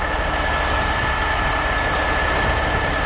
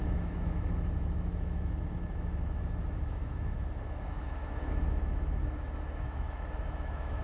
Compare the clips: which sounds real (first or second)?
first